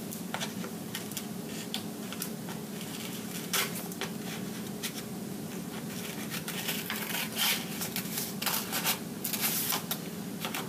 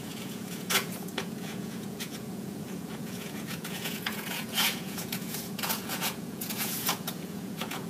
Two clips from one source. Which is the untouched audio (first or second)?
first